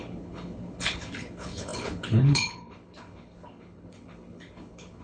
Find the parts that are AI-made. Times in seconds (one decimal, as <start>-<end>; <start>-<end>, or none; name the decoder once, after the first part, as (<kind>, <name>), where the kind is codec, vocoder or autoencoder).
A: 0.0-5.0 (codec, HILCodec)